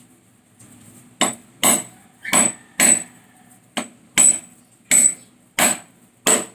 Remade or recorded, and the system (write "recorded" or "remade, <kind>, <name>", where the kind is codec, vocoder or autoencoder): recorded